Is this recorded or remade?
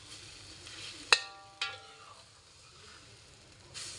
recorded